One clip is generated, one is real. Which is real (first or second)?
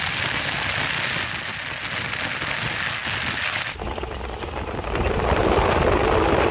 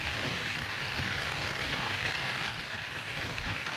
first